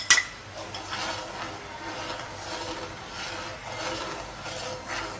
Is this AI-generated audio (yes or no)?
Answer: no